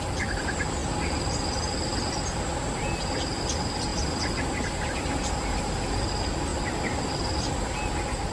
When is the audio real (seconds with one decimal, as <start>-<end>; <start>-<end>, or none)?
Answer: 0.0-3.9; 6.1-8.3